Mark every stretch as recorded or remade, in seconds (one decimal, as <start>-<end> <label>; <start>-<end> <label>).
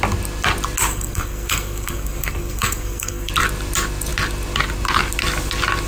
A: 0.0-0.9 recorded; 0.9-3.3 remade; 3.3-5.9 recorded